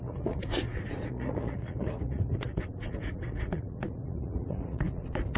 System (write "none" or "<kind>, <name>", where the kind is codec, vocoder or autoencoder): vocoder, Vocos